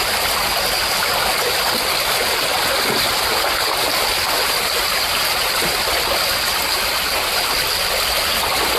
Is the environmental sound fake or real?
real